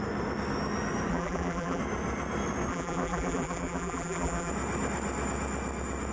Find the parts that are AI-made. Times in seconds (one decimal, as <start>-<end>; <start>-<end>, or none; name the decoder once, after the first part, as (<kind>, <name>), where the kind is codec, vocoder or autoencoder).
1.1-1.8 (vocoder, BigVGAN v2); 2.7-4.5